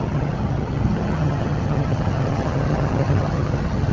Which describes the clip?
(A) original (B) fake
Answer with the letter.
B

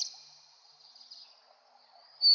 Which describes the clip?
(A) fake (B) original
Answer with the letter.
B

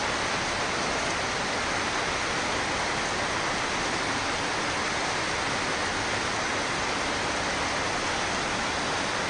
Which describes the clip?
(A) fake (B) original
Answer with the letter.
B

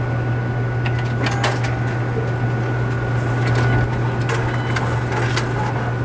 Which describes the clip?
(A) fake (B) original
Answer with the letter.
B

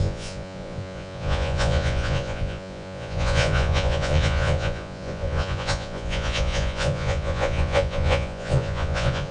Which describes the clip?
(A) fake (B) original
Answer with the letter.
A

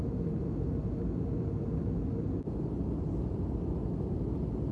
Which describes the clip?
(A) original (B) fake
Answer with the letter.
A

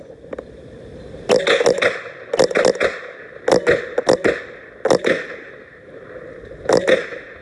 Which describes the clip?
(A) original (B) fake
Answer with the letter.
A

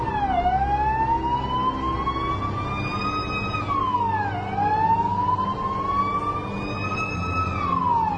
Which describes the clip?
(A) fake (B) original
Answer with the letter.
B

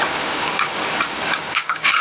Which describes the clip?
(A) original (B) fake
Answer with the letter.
B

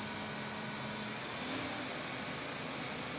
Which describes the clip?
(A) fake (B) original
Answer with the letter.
B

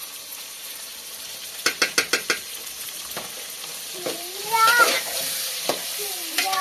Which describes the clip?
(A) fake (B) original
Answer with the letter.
A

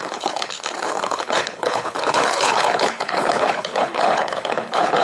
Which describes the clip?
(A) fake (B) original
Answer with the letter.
A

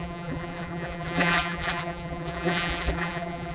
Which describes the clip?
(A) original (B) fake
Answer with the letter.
B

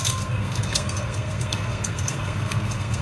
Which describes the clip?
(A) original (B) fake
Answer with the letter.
B